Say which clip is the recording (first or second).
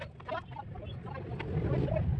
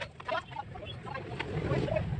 first